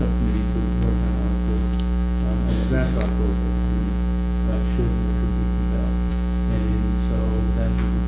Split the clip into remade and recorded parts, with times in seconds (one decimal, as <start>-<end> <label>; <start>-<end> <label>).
0.0-5.3 remade; 5.3-6.1 recorded; 6.1-6.7 remade; 6.7-7.5 recorded; 7.5-8.1 remade